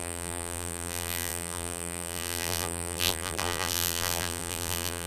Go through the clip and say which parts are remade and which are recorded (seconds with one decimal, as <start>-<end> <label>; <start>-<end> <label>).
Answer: 0.0-5.1 remade